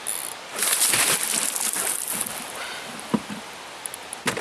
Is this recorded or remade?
recorded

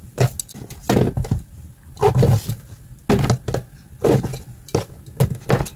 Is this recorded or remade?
recorded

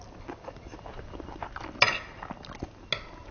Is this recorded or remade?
recorded